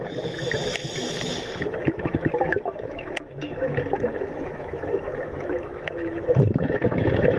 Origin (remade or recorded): remade